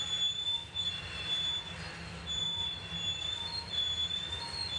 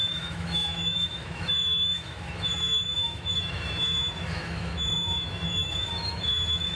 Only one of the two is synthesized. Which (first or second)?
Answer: second